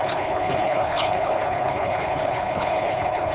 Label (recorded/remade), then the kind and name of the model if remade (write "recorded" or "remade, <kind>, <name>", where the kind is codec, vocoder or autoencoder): remade, codec, HILCodec